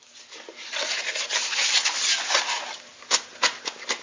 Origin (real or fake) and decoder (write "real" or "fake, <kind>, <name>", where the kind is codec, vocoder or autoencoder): real